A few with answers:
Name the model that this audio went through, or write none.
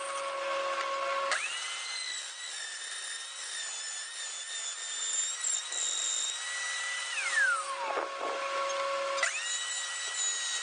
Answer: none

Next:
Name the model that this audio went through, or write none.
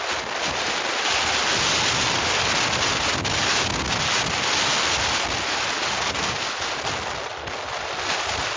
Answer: none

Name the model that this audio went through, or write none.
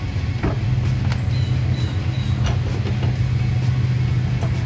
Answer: none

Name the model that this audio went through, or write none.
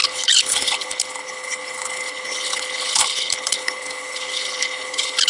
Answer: codec, HILCodec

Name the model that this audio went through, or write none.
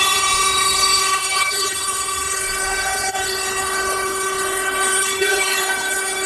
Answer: codec, HILCodec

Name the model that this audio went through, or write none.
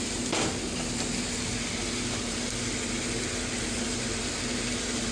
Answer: none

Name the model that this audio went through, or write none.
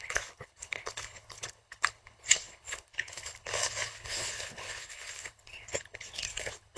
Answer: codec, HILCodec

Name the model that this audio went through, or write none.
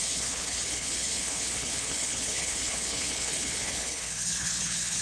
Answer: codec, HILCodec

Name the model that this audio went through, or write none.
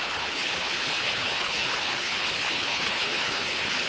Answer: codec, HILCodec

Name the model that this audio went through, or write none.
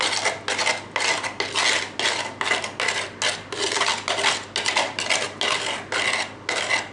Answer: none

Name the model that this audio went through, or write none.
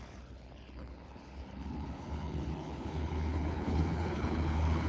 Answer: codec, HILCodec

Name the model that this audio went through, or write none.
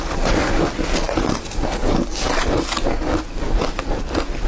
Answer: none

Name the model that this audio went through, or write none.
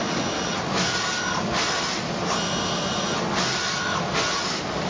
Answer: none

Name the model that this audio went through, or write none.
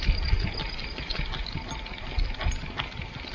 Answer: none